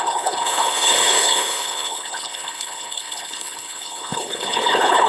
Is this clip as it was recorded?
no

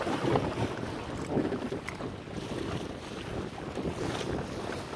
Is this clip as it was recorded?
yes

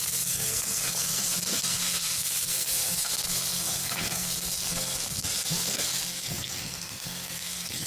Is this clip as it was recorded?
no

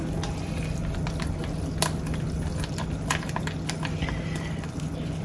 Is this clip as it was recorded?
yes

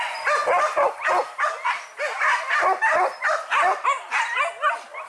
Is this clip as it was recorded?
yes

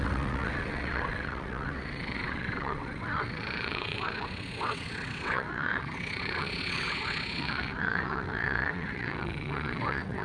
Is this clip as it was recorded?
no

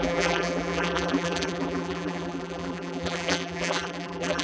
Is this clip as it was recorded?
no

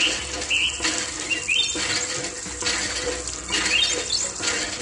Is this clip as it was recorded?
yes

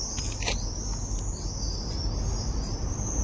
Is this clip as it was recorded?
yes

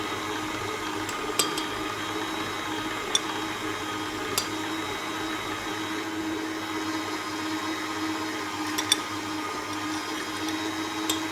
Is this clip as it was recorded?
yes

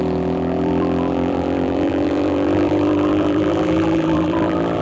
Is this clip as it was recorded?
no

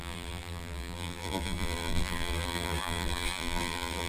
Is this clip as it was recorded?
no